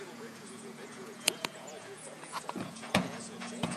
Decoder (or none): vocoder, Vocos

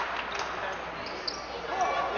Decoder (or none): none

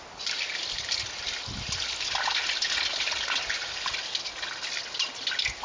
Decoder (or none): none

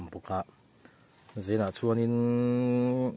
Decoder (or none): none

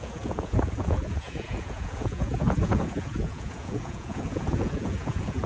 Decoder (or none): vocoder, Vocos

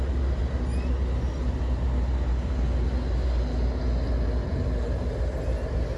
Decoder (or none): none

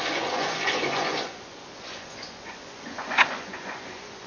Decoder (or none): vocoder, Vocos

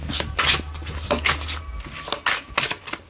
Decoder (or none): none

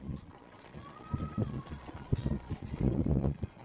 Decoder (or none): vocoder, Vocos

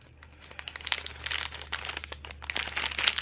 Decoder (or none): none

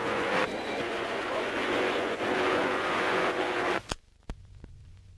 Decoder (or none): vocoder, Vocos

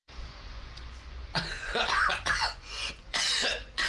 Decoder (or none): vocoder, Vocos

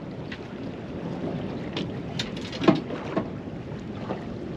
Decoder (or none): none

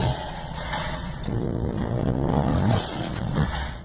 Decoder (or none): vocoder, Vocos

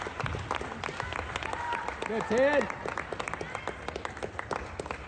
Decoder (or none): none